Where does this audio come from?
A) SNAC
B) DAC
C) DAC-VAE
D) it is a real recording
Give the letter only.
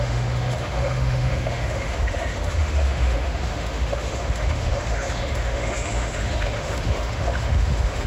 C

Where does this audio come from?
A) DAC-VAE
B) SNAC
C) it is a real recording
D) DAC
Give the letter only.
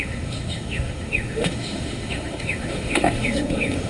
A